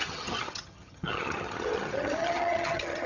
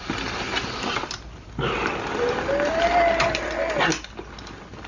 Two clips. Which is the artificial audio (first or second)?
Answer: first